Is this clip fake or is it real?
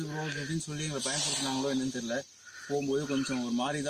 real